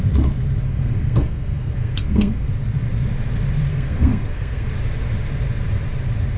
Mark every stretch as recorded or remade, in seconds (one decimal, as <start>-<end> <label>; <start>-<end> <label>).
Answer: 0.0-0.7 recorded; 0.7-2.5 remade; 2.5-3.7 recorded; 3.7-4.7 remade; 4.7-6.4 recorded